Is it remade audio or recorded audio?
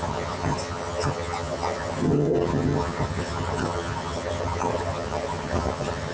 remade